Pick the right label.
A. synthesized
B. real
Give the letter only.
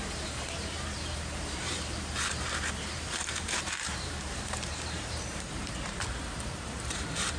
A